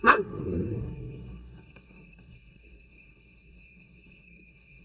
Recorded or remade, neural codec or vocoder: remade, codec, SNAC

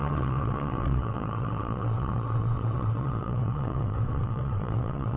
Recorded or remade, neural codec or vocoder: remade, vocoder, WaveNeXt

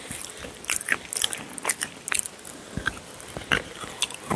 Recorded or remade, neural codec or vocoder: recorded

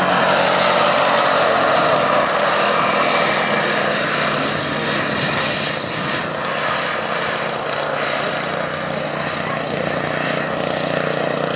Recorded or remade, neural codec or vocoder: recorded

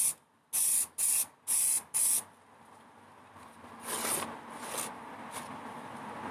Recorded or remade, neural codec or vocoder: recorded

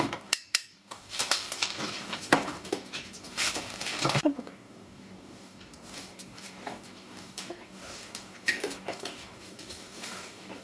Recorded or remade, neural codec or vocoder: remade, codec, DAC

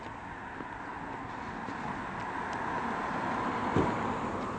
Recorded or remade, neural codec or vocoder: recorded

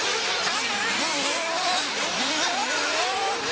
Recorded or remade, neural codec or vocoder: remade, vocoder, BigVGAN v2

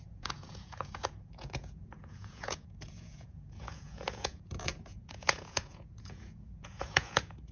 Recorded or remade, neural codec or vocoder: remade, vocoder, Vocos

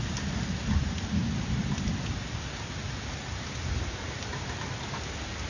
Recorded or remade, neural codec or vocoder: recorded